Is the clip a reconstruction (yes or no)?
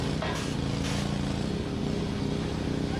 no